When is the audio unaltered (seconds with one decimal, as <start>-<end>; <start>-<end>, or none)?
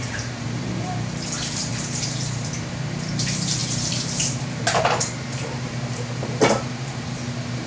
none